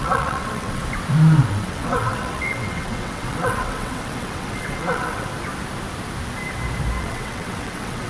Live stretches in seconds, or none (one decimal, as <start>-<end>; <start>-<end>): 0.8-1.4; 5.3-7.0